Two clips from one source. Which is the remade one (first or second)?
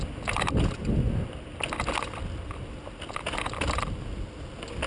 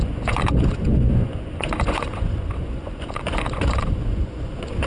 second